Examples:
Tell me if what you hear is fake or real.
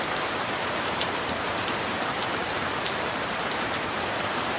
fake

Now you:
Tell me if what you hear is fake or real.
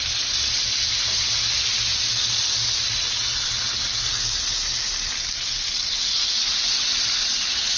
real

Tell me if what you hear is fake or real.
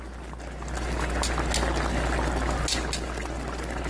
real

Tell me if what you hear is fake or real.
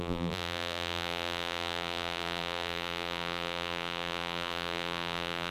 fake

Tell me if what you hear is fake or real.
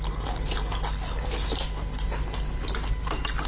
real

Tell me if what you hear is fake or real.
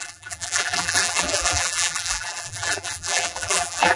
fake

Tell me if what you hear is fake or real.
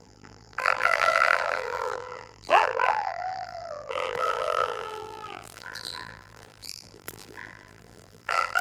fake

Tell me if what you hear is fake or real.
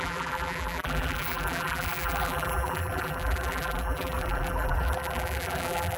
fake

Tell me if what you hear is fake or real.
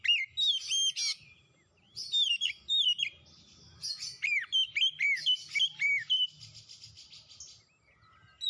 real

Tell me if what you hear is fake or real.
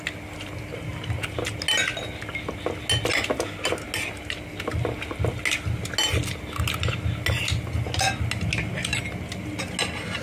real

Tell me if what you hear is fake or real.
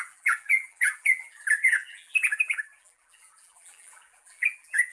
fake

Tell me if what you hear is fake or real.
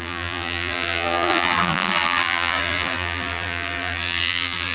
fake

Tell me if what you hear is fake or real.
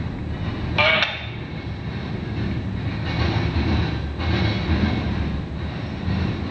real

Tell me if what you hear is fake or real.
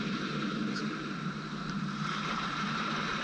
fake